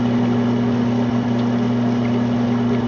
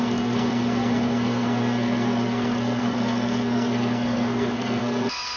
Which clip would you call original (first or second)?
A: first